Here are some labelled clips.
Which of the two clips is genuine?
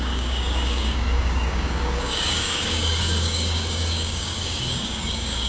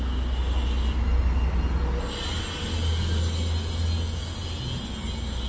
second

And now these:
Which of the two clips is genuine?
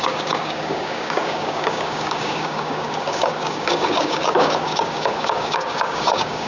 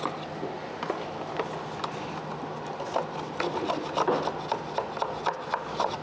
second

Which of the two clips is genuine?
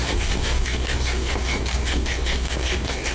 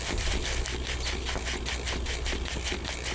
second